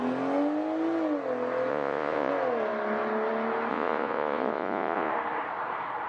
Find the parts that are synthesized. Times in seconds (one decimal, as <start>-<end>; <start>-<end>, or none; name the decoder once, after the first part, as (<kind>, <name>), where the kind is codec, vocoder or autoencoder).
1.7-2.3 (vocoder, Vocos); 3.7-5.1